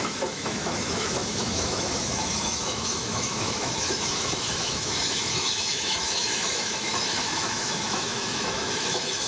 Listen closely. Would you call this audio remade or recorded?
remade